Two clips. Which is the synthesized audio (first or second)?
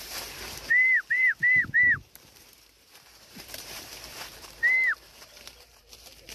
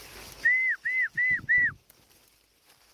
first